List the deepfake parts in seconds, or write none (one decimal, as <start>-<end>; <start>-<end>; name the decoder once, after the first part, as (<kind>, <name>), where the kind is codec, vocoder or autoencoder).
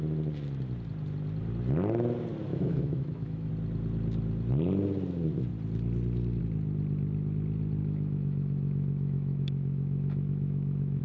2.5-3.5 (autoencoder, DAC-VAE); 7.8-11.0